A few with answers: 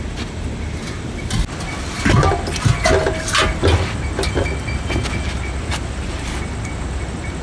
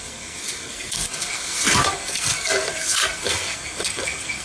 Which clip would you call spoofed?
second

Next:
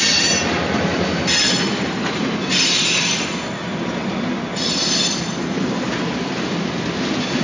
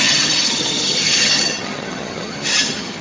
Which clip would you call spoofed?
second